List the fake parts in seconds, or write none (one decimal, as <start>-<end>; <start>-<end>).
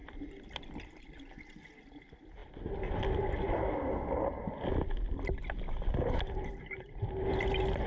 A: none